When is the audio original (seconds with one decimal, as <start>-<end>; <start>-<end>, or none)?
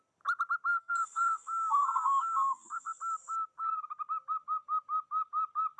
0.0-0.7; 3.0-5.8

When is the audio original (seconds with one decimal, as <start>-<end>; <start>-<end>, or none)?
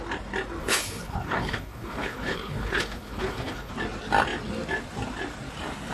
0.0-0.6; 3.7-5.9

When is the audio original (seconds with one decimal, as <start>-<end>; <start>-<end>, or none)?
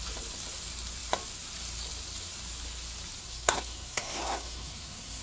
0.0-3.2